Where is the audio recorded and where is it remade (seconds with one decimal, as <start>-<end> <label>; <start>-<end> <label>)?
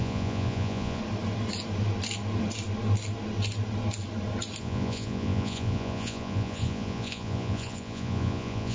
0.0-1.0 remade; 1.0-4.6 recorded; 4.6-8.7 remade